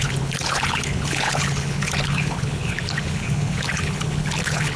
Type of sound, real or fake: fake